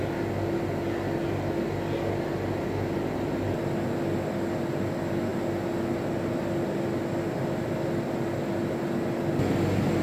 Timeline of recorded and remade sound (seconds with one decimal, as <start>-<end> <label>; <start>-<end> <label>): 0.0-10.0 recorded